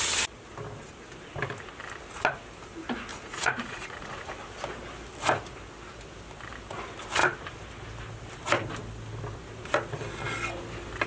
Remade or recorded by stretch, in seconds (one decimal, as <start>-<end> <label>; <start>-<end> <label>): 0.0-3.1 recorded; 3.1-4.3 remade; 4.3-11.1 recorded